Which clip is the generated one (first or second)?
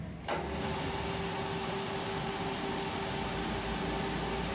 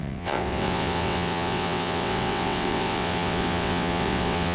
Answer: second